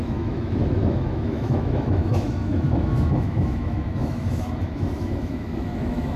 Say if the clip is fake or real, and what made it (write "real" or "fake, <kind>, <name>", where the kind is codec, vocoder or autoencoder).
fake, autoencoder, DAC-VAE